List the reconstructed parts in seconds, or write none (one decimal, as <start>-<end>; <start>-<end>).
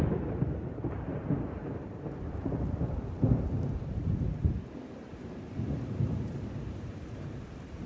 0.0-7.9